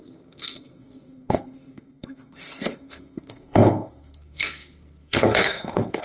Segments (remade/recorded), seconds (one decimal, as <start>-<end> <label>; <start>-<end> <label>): 0.0-6.0 remade